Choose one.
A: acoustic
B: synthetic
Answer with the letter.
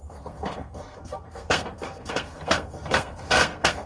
B